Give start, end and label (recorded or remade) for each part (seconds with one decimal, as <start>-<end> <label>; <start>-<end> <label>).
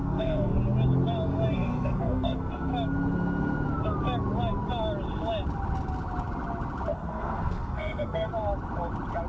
0.0-0.5 remade; 0.5-1.5 recorded; 1.5-2.7 remade; 2.7-6.9 recorded; 6.9-8.3 remade; 8.3-9.3 recorded